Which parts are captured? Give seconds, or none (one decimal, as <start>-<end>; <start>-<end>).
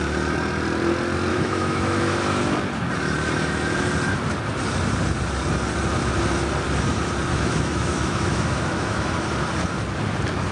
0.0-1.3; 2.4-7.3; 9.1-10.5